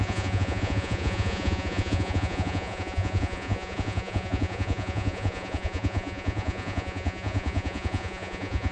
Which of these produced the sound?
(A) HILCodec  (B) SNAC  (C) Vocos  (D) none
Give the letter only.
C